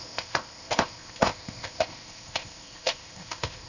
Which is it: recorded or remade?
remade